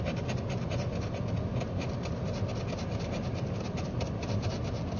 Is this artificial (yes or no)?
no